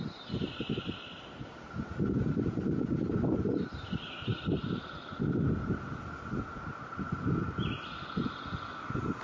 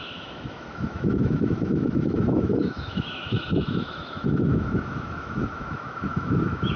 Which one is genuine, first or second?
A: first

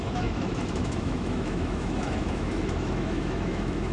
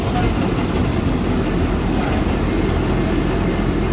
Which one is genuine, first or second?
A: second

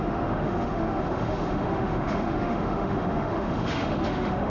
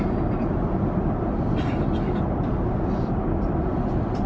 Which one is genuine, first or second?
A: second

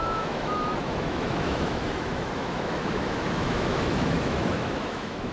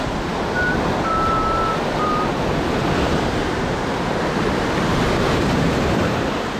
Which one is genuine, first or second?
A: second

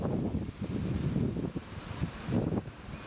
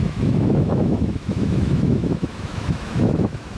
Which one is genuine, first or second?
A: first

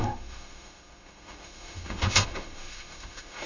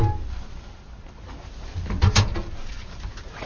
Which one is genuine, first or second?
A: second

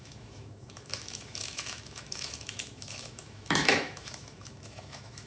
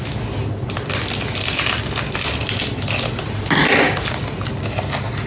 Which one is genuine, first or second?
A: second